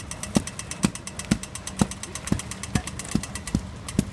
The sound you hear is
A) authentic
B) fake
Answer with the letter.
A